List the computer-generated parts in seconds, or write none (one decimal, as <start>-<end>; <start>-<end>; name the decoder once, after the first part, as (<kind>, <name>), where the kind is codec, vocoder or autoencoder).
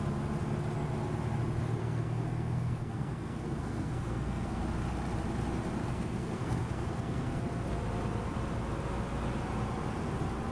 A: 1.8-4.6 (codec, SNAC); 5.8-7.4